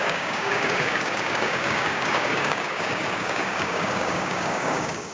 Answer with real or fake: fake